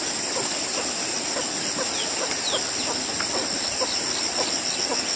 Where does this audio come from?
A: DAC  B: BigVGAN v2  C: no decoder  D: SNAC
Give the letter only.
C